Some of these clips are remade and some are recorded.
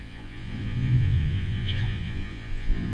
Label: remade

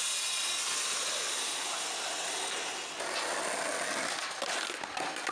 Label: recorded